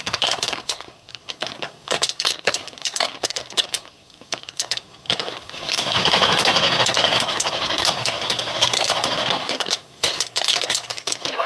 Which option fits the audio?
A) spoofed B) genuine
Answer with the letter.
A